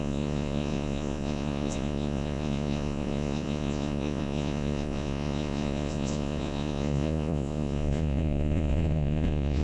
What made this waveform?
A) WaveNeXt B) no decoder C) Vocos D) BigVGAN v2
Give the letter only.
C